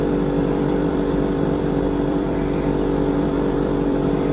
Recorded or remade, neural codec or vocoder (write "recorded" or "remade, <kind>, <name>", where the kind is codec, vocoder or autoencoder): remade, vocoder, BigVGAN v2